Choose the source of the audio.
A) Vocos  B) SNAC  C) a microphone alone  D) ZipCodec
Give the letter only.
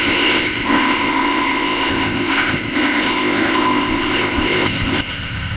D